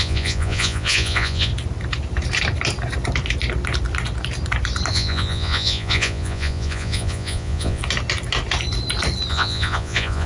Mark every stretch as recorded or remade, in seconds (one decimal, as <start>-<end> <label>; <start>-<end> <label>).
0.0-1.5 remade; 1.5-4.9 recorded; 4.9-7.8 remade; 7.8-9.3 recorded; 9.3-10.3 remade